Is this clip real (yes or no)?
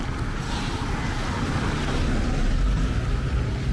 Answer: yes